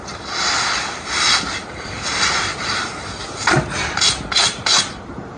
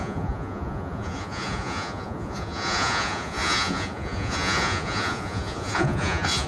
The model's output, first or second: second